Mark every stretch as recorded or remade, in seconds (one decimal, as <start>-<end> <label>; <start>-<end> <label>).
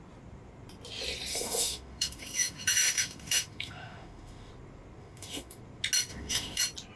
0.0-1.3 recorded; 1.3-4.5 remade; 4.5-5.0 recorded; 5.0-5.6 remade; 5.6-6.1 recorded; 6.1-6.6 remade; 6.6-7.0 recorded